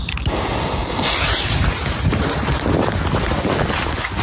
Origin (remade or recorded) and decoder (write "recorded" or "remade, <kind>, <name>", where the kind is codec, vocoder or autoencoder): recorded